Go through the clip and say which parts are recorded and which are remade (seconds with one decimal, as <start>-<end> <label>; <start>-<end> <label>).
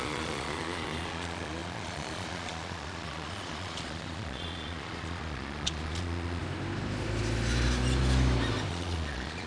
0.0-6.4 remade; 6.4-8.7 recorded; 8.7-9.5 remade